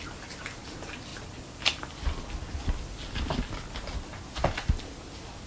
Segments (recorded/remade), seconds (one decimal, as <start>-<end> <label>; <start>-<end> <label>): 0.0-5.5 recorded